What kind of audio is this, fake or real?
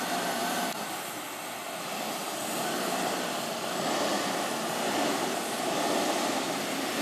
fake